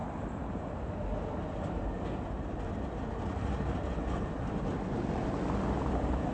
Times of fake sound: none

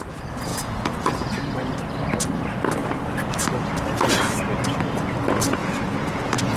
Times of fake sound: 0.5-1.1 (vocoder, Vocos); 5.6-6.6

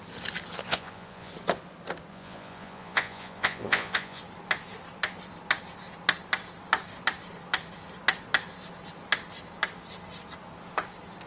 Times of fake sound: 0.7-1.3 (vocoder, Vocos); 2.1-4.2

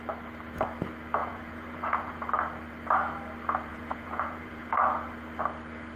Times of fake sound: 1.2-2.3 (vocoder, Vocos); 3.7-4.7

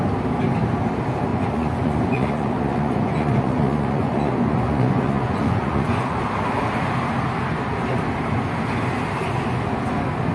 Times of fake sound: 1.3-6.2 (vocoder, Vocos)